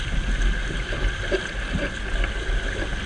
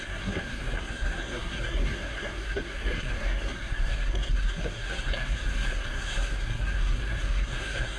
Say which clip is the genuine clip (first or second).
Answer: first